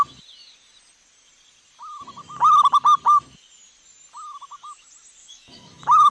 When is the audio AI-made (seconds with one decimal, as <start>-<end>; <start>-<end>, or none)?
5.2-6.1